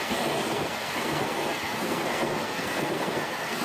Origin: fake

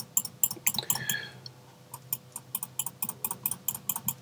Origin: real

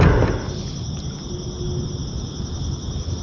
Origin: real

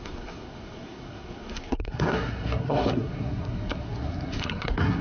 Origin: fake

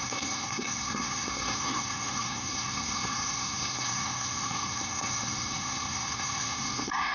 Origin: fake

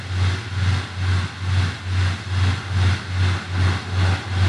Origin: real